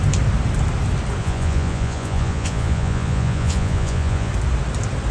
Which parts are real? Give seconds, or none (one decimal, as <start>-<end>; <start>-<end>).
0.0-1.2; 4.3-5.1